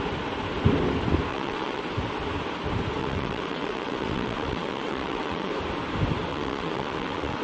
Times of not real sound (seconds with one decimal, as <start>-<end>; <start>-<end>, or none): 1.3-1.8; 3.0-5.5; 6.3-7.4